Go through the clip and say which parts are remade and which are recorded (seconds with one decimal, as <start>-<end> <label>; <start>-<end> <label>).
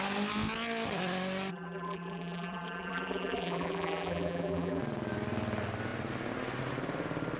0.0-1.5 recorded; 1.5-4.8 remade; 4.8-7.4 recorded